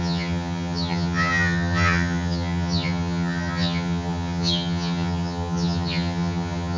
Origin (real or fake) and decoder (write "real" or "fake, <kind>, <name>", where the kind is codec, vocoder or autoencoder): fake, vocoder, HiFi-GAN